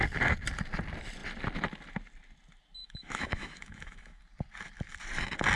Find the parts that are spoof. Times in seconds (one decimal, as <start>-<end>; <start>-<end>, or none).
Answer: 2.8-4.2

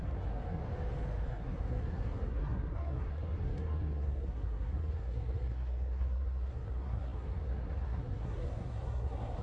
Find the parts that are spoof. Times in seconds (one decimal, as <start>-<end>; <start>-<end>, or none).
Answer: 0.0-0.6; 1.3-9.4

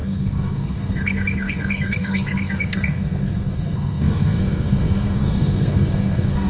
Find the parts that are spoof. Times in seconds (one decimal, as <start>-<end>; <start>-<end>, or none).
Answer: 0.0-6.5

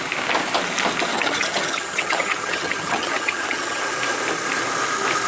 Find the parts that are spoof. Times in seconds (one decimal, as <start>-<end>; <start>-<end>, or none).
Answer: 1.1-3.8

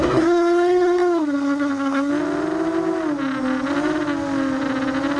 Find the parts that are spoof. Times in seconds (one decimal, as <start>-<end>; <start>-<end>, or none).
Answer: 0.0-2.1

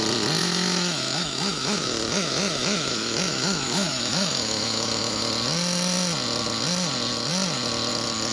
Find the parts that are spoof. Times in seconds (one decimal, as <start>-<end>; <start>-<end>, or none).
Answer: 0.4-5.3

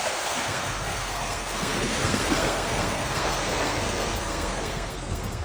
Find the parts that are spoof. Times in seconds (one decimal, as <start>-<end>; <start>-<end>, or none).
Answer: 0.0-5.4

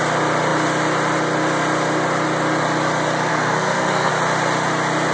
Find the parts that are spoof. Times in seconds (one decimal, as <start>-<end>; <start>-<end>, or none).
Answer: 3.3-4.1